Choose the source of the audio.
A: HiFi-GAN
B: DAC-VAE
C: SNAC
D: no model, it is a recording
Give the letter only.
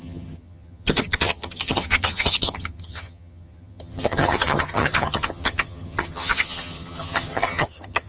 A